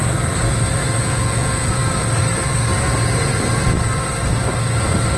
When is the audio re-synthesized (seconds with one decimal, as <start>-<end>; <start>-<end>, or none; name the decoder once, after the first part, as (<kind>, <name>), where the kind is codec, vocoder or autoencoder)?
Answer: 1.0-1.8 (vocoder, Vocos)